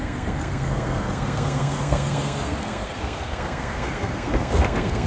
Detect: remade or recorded remade